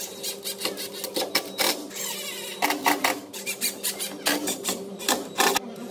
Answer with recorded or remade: recorded